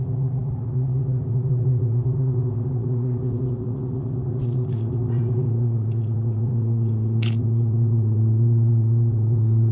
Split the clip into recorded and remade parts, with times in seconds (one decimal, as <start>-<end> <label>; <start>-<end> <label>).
0.0-9.7 remade